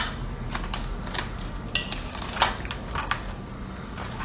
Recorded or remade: recorded